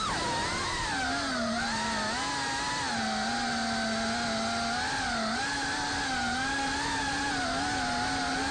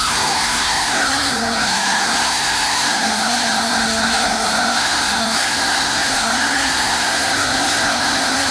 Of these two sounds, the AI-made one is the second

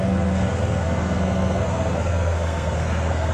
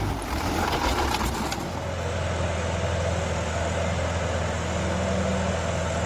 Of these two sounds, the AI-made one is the first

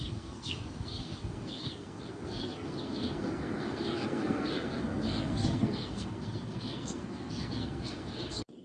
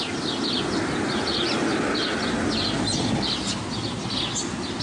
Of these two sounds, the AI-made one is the first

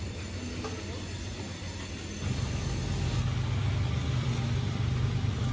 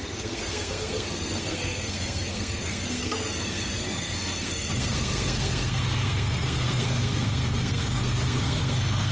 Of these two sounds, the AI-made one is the second